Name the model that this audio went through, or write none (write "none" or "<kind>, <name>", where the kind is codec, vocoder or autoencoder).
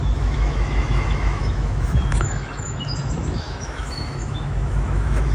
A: autoencoder, DAC-VAE